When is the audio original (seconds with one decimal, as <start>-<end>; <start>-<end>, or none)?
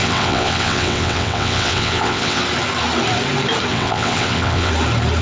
2.4-3.7; 4.7-5.2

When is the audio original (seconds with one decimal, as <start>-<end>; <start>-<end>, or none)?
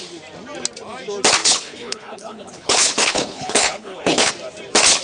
0.0-1.4; 4.3-5.0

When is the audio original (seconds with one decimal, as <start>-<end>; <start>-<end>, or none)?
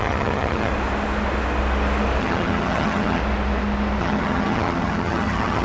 0.7-2.2; 3.2-4.0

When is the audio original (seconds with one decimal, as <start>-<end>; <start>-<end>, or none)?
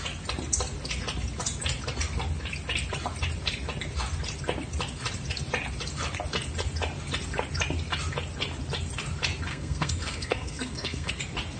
0.0-9.5; 11.1-11.6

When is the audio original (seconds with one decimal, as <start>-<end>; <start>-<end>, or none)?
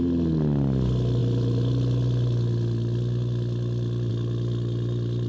0.0-5.3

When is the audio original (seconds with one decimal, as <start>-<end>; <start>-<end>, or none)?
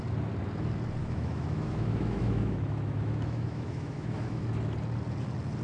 0.0-1.0; 4.4-5.6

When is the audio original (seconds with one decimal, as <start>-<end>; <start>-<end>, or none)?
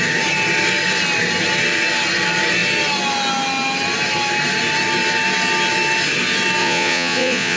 0.0-6.6